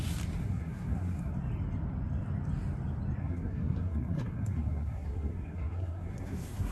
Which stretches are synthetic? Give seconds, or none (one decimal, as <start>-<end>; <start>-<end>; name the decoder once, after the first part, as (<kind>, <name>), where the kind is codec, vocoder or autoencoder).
0.4-1.3 (codec, SNAC); 3.2-6.7